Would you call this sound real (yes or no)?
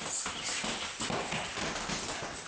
yes